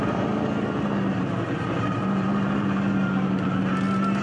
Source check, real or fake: real